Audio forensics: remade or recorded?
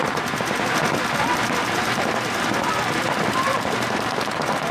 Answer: recorded